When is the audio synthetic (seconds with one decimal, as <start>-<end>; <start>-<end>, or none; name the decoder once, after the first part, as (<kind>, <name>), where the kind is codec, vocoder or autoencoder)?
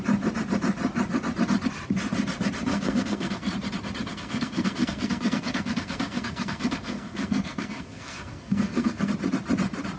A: 2.7-3.5 (codec, SNAC); 4.1-9.1